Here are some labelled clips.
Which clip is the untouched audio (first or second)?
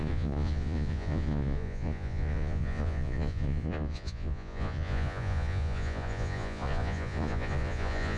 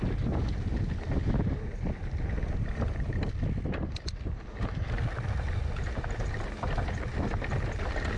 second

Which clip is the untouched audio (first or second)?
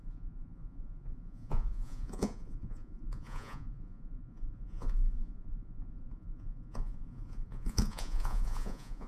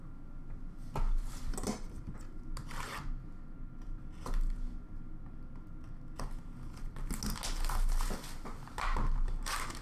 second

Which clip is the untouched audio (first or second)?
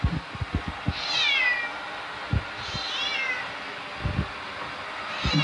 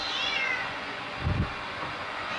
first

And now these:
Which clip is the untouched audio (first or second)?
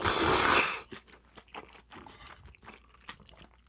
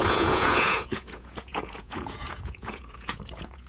first